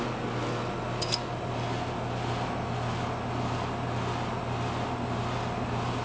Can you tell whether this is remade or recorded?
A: recorded